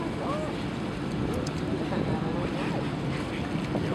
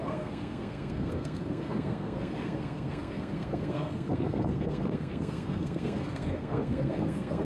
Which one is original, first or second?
first